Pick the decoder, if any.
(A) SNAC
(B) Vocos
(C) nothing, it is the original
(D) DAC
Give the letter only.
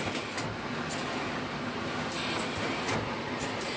C